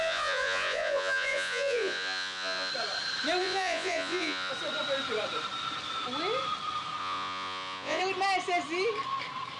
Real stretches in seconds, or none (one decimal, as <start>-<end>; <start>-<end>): 2.7-3.4; 4.5-7.0; 8.0-9.6